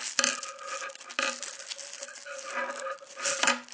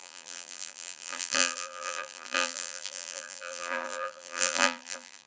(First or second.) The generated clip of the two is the second